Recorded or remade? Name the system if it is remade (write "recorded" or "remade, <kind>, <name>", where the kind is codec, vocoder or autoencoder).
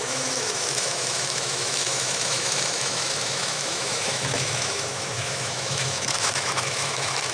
remade, autoencoder, DAC-VAE